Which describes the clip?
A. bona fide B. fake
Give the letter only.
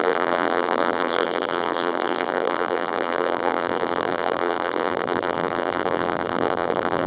B